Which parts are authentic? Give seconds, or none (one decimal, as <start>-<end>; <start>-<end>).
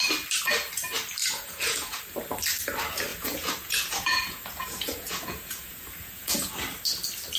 0.0-1.2; 2.0-3.1; 6.5-7.4